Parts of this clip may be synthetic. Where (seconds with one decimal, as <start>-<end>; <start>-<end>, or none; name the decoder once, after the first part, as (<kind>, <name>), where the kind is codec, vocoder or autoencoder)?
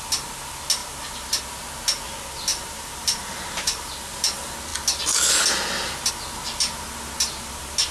2.5-3.9 (vocoder, BigVGAN v2)